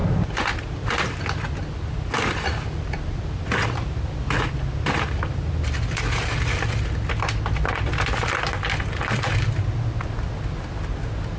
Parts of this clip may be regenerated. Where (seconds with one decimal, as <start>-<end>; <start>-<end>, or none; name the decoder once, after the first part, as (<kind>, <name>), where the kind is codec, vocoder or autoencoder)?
none